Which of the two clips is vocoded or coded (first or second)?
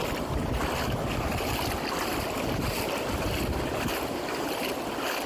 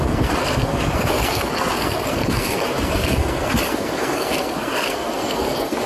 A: second